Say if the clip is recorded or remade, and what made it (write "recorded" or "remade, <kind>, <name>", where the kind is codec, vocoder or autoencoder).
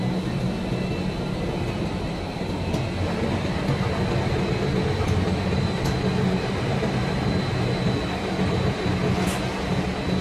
recorded